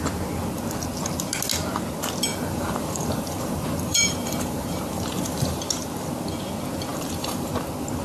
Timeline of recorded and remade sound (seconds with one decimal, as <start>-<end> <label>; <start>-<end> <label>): 0.0-2.3 recorded; 2.3-5.6 remade; 5.6-6.9 recorded; 6.9-7.5 remade; 7.5-8.0 recorded